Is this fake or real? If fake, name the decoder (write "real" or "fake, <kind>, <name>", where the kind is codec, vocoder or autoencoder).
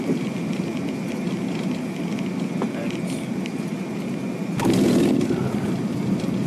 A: real